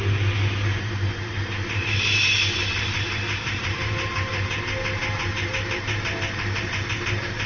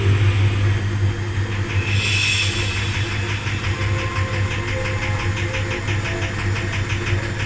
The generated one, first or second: first